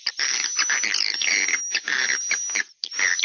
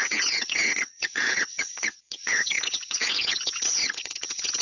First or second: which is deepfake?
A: second